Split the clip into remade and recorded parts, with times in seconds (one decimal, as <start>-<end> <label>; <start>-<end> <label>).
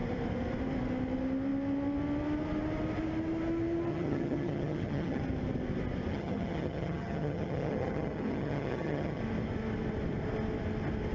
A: 0.0-3.9 recorded; 3.9-5.2 remade; 5.2-6.1 recorded; 6.1-9.2 remade; 9.2-11.1 recorded